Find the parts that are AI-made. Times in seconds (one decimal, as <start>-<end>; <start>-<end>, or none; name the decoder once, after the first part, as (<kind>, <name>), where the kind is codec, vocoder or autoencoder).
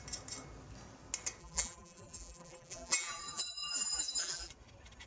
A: 1.4-4.5 (vocoder, BigVGAN v2)